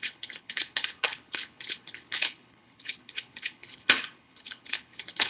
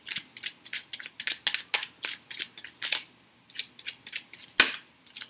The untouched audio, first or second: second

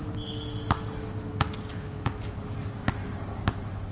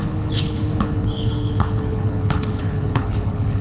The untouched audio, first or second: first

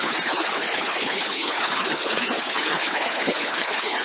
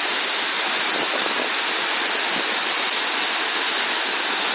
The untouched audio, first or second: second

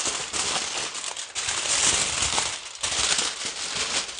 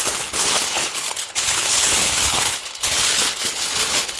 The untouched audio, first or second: first